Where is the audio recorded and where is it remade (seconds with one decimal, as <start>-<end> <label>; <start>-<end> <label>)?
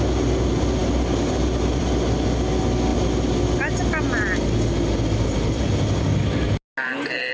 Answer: 0.0-7.3 recorded